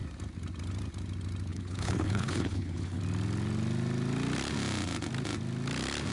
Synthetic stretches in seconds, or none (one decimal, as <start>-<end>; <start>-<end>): 1.5-3.0